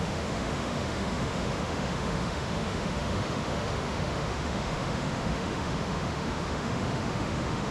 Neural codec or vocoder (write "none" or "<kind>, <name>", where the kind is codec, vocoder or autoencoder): autoencoder, DAC-VAE